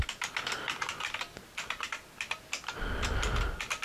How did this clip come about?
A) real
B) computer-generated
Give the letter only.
A